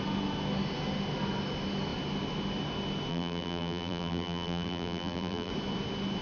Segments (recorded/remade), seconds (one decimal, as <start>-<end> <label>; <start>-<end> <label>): 0.0-3.1 recorded; 3.1-5.5 remade; 5.5-6.2 recorded